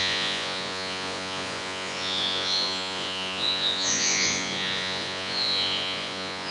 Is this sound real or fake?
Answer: fake